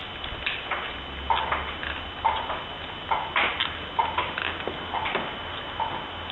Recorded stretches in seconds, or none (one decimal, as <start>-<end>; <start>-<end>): 0.0-6.3